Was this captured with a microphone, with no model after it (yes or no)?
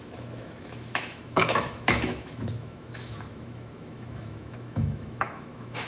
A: no